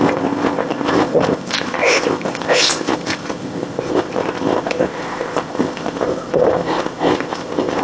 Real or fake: fake